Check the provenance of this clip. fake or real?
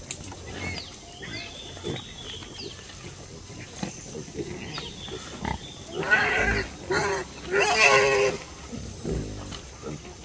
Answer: real